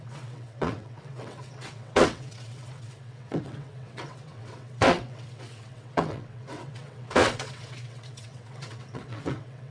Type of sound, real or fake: fake